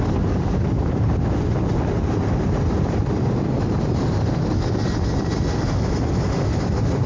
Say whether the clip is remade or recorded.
recorded